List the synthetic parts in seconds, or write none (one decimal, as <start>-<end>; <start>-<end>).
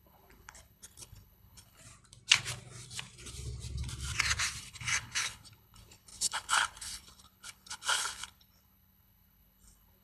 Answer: 0.0-1.8; 4.6-10.0